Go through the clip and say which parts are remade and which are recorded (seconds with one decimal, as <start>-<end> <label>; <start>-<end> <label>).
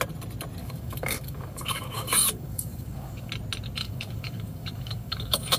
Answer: 0.0-0.6 recorded; 0.6-3.3 remade; 3.3-3.8 recorded; 3.8-5.6 remade